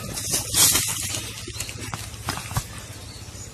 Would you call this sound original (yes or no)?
yes